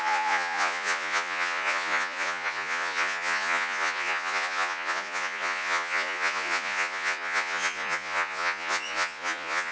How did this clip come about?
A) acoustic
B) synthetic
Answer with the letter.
B